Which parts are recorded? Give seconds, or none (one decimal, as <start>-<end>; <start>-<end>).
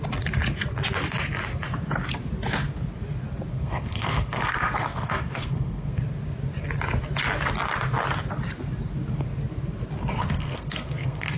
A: 0.0-3.5; 6.0-10.0